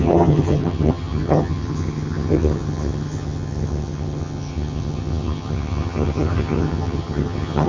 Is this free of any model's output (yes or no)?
no